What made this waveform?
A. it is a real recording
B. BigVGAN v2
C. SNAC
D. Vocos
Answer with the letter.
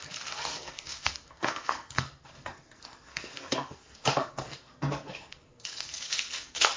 C